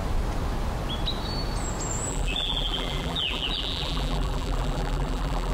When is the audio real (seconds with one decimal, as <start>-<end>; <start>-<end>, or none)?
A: 0.0-2.1